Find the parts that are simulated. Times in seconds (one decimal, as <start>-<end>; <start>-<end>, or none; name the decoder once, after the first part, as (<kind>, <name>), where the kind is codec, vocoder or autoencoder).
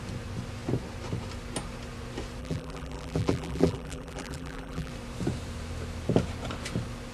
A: 2.4-4.9 (vocoder, BigVGAN v2)